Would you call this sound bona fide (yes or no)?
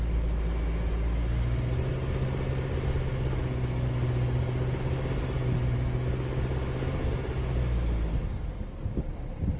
yes